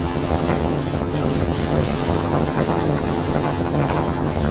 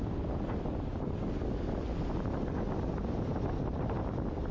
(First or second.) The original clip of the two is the second